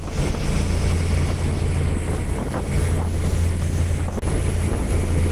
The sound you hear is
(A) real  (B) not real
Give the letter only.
A